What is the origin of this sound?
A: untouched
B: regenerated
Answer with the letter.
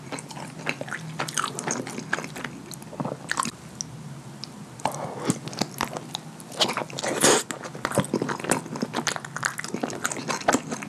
A